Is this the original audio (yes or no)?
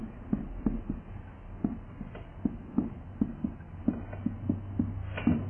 yes